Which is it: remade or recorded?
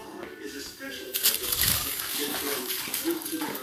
remade